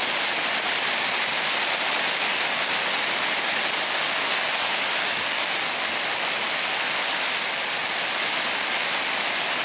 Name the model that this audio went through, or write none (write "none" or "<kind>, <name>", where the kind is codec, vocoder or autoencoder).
none